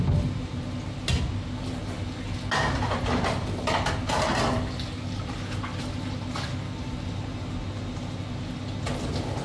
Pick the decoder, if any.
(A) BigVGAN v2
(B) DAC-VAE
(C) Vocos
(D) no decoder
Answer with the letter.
D